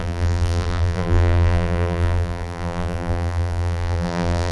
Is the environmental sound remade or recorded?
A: remade